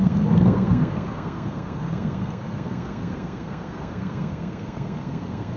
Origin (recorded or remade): remade